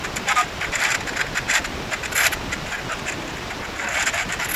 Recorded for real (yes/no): yes